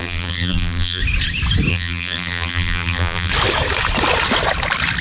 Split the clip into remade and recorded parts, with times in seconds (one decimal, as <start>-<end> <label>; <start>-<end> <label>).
0.0-1.0 remade; 1.0-1.7 recorded; 1.7-3.3 remade; 3.3-5.0 recorded